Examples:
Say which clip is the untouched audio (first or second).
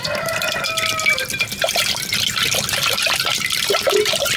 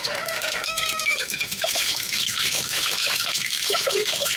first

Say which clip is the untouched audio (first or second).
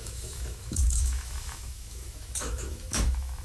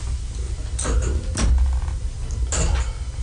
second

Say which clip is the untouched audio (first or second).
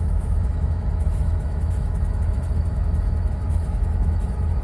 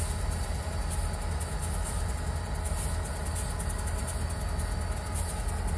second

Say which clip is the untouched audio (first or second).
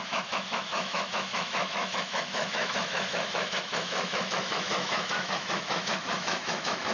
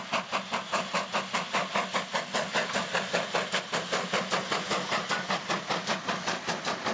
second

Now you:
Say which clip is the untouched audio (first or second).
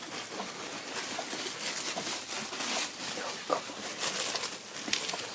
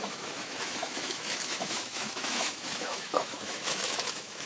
first